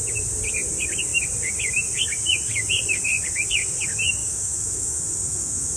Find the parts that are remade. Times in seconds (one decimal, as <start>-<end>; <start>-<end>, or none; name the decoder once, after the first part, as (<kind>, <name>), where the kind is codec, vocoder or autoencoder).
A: 4.2-5.8 (autoencoder, DAC-VAE)